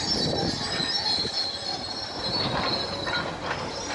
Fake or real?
real